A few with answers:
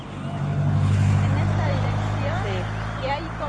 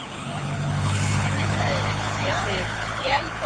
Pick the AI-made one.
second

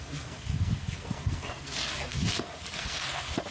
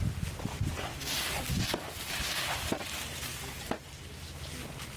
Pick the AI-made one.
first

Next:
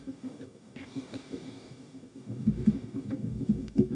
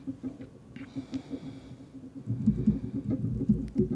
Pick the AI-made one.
first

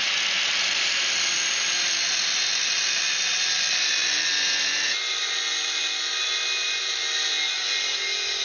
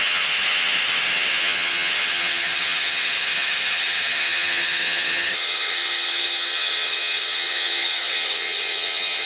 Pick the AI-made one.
second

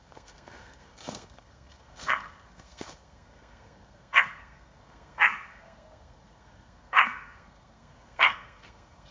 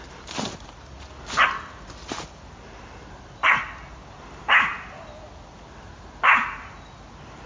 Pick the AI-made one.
first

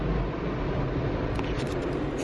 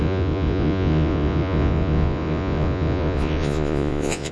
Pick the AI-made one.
second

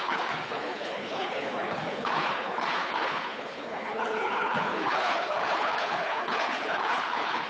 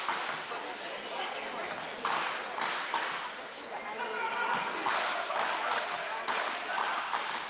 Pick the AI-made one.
first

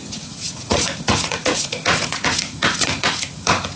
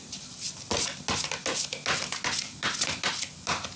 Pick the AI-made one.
first